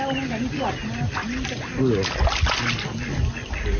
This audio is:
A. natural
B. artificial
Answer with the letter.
A